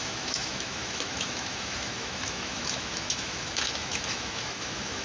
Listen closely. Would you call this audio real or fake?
fake